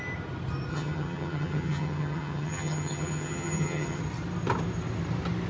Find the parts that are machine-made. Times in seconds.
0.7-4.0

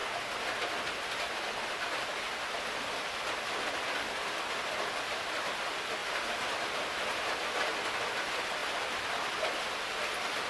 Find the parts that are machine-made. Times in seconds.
none

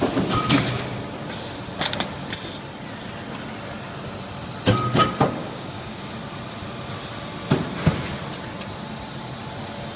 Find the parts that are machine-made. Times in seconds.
5.4-6.1

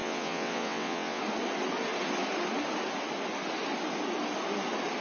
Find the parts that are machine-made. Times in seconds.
0.0-1.2

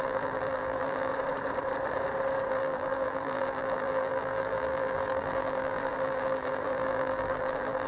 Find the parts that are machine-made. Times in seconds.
0.0-1.1; 2.5-7.9

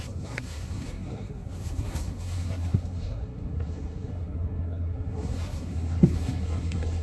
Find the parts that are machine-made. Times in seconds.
0.0-7.0

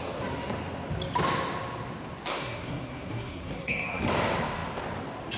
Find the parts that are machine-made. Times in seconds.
2.3-4.0

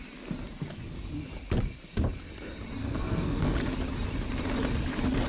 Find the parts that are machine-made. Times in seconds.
2.8-3.5